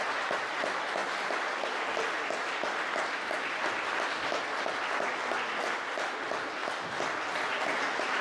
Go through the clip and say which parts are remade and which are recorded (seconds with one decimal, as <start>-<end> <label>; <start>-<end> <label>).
0.0-8.2 recorded